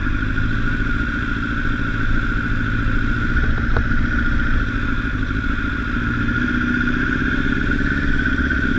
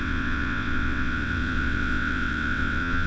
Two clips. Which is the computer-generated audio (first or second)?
second